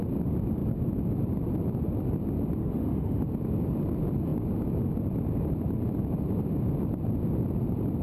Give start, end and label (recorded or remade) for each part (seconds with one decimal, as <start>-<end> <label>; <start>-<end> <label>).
0.0-2.6 recorded; 2.6-3.2 remade; 3.2-8.0 recorded